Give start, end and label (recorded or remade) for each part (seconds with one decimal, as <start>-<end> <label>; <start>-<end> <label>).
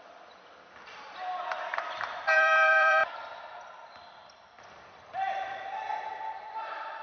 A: 0.0-7.0 remade